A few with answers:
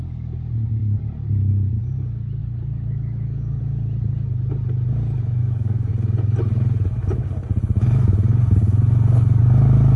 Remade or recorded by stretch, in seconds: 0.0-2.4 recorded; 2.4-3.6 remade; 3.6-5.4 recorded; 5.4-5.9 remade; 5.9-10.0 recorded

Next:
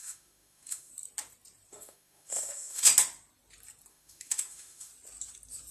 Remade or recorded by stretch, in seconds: 0.0-0.9 remade; 0.9-1.7 recorded; 1.7-2.9 remade; 2.9-3.9 recorded; 3.9-4.9 remade; 4.9-5.7 recorded

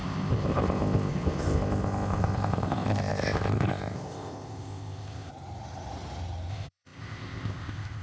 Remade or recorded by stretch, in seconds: 0.0-5.3 remade; 5.3-6.5 recorded; 6.5-8.0 remade